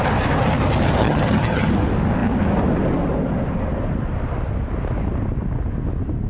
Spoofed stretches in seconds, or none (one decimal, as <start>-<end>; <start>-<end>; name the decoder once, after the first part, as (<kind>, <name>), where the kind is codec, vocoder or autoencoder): 1.0-1.7 (vocoder, HiFi-GAN)